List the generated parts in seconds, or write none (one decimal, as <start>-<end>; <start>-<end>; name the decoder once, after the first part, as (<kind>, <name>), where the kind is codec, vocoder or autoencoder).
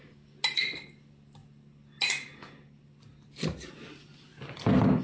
none